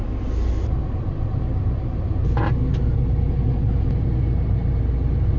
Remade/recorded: recorded